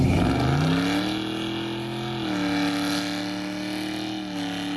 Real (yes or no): yes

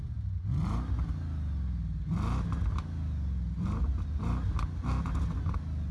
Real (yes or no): yes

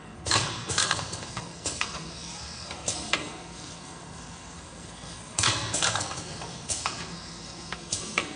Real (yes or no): no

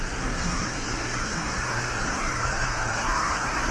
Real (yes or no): no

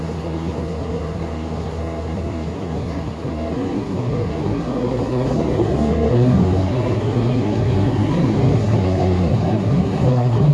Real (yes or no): no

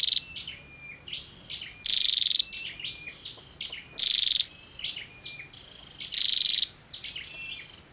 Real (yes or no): yes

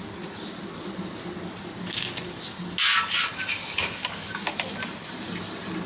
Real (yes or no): yes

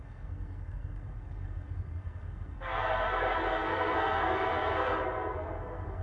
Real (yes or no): no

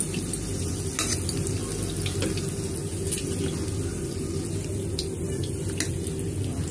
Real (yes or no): yes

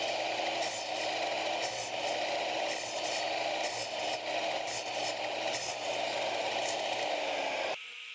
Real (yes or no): yes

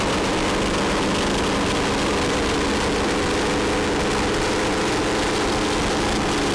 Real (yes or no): yes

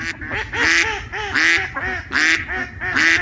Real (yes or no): yes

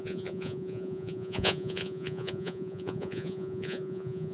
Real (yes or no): no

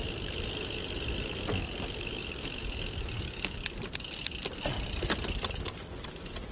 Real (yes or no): yes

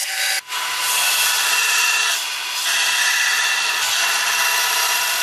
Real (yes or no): yes